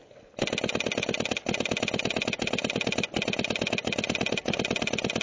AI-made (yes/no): no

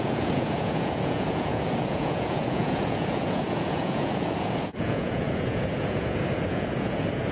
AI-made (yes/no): yes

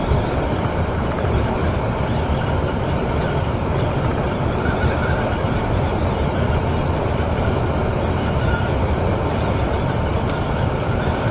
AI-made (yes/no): yes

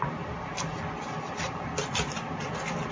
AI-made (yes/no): no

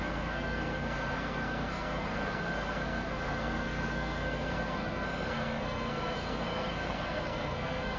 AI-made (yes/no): yes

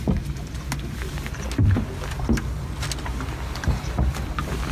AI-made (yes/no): no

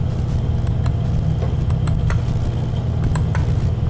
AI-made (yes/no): no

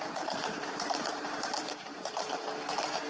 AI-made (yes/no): yes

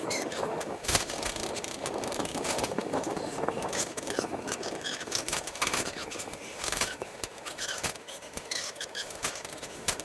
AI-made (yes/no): yes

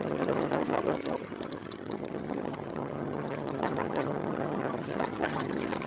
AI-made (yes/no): yes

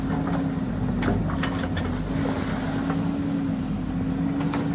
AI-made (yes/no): no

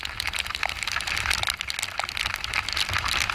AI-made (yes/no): no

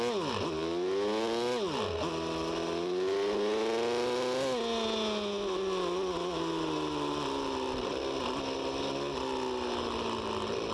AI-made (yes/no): no